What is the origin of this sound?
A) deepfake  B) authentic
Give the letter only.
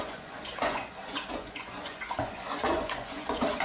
A